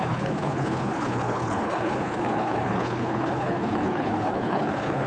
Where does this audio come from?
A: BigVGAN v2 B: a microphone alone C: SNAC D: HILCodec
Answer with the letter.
D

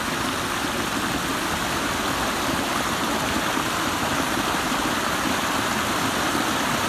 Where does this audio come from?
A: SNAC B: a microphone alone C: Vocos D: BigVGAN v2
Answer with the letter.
B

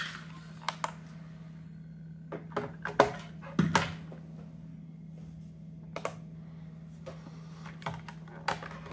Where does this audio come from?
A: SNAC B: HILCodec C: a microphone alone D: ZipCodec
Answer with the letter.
C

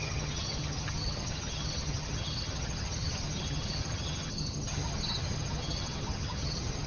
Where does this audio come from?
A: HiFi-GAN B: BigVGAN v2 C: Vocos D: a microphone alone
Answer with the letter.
A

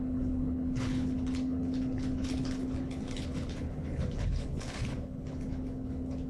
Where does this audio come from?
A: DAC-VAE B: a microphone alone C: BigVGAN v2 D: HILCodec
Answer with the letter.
D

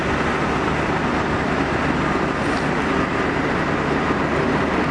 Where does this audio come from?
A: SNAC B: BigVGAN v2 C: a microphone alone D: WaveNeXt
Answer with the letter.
C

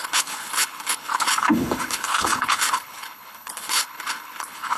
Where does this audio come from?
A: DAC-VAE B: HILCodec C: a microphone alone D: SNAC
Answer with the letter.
B